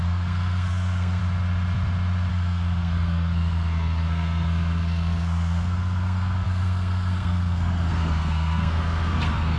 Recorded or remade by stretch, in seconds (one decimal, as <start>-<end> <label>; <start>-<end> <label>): 0.0-1.2 remade; 1.2-2.3 recorded; 2.3-9.6 remade